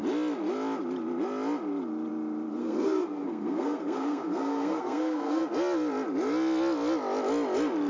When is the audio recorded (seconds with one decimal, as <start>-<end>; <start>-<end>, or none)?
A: 0.0-2.6; 5.4-7.9